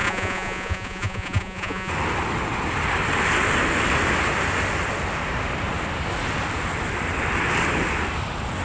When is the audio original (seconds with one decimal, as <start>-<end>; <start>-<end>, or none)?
1.9-8.6